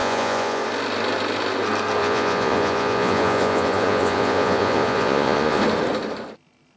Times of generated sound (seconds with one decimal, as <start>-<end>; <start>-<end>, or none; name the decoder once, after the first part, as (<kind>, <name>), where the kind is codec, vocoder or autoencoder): 0.0-0.6 (vocoder, Vocos); 2.0-5.6